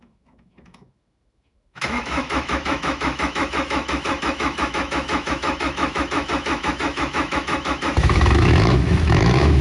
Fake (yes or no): yes